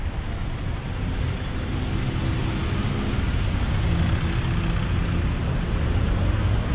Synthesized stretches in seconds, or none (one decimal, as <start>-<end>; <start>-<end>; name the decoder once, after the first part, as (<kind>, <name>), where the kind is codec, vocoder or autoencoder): none